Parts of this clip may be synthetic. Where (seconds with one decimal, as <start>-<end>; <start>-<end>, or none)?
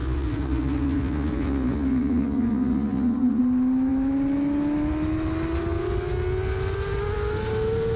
0.0-3.4